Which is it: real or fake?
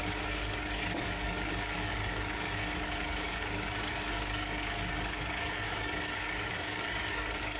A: fake